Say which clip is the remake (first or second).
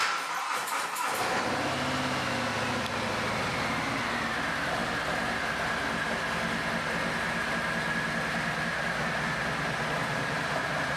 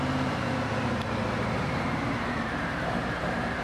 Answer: second